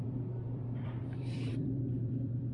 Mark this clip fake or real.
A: fake